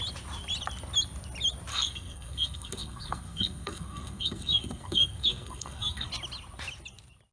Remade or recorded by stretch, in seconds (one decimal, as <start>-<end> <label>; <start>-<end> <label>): 0.0-1.7 recorded; 1.7-6.1 remade; 6.1-7.3 recorded